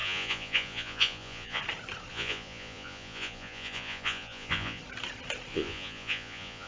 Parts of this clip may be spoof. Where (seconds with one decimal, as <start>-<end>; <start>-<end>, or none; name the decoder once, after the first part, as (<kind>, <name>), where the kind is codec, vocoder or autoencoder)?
0.0-1.6 (vocoder, Vocos); 2.1-4.8; 5.5-6.7